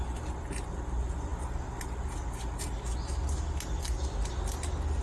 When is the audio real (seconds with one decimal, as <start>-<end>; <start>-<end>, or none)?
0.0-5.0